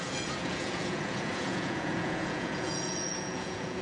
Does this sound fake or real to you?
fake